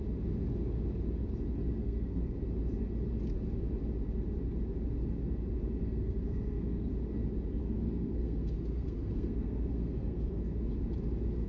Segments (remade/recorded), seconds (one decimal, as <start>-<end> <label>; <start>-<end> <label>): 0.0-1.8 recorded; 1.8-2.4 remade; 2.4-5.8 recorded; 5.8-6.9 remade; 6.9-7.6 recorded; 7.6-10.4 remade; 10.4-11.5 recorded